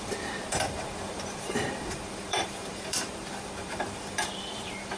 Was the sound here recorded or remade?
remade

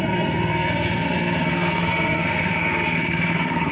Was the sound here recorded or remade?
remade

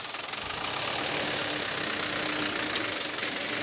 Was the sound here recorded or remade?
recorded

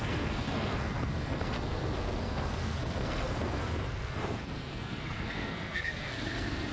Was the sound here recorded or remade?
remade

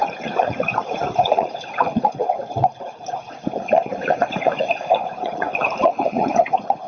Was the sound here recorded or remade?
remade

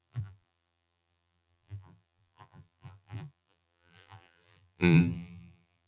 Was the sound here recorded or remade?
remade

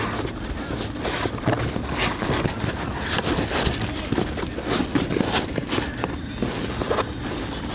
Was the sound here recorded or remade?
recorded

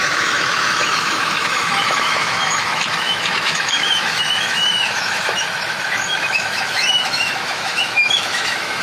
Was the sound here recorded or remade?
remade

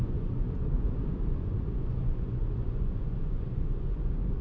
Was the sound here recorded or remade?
remade